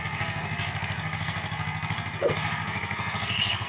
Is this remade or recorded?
remade